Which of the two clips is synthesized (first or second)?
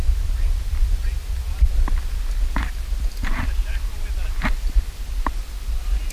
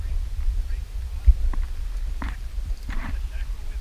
second